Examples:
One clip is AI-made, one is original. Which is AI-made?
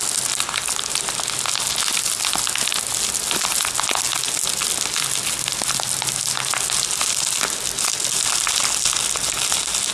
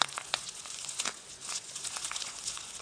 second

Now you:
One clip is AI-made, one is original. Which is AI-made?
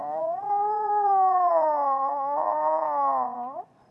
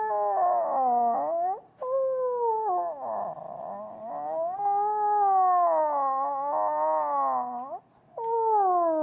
first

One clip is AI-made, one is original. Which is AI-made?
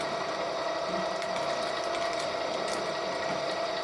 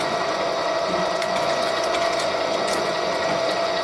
second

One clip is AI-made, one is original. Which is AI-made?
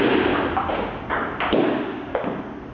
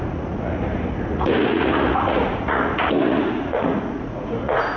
second